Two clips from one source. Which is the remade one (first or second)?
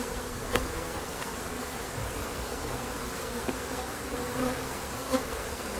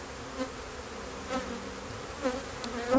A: first